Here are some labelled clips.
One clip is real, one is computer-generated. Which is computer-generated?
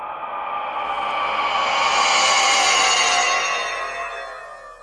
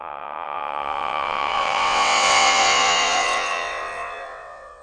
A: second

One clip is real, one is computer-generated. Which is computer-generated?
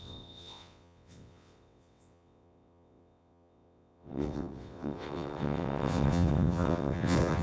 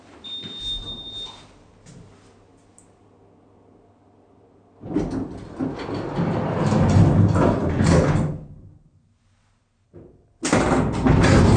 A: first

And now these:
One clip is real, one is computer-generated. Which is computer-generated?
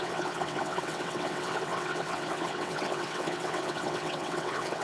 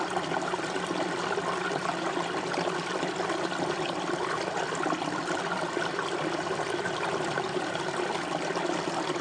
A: first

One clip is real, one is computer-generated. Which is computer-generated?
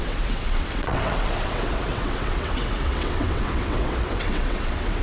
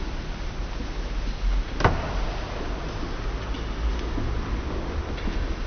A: first